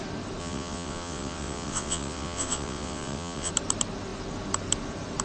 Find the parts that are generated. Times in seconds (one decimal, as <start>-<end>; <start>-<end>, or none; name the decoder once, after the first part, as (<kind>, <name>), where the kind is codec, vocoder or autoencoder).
0.4-3.5 (vocoder, WaveNeXt)

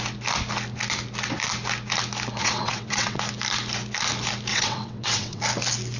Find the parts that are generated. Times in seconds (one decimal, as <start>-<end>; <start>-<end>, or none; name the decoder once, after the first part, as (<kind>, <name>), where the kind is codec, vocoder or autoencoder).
2.4-3.2 (vocoder, WaveNeXt); 4.5-5.4

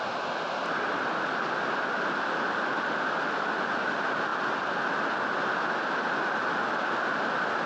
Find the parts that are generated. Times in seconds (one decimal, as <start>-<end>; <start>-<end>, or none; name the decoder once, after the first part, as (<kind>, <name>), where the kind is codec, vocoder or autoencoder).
none